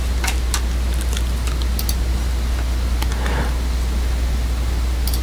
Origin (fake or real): real